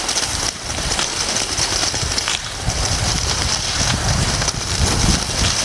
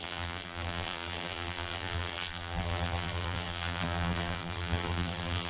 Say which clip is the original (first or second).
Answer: first